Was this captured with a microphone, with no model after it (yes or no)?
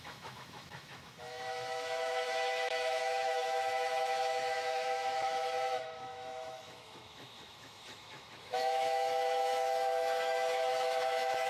no